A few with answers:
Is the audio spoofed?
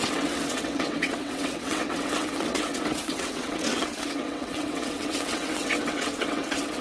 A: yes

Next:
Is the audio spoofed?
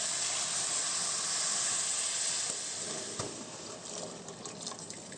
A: no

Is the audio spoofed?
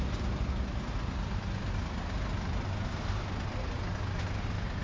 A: no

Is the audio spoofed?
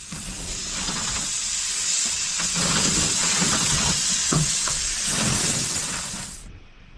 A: yes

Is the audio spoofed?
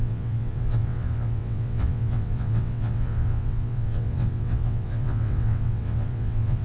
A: yes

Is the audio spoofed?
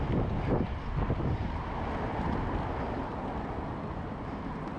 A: no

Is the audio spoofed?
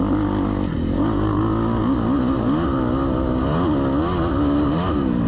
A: no